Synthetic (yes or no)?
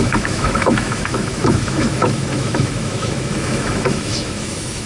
yes